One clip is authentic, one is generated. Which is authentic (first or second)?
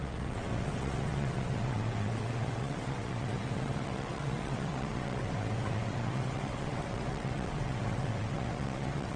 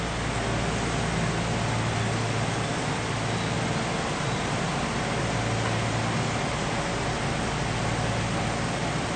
second